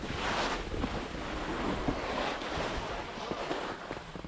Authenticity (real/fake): real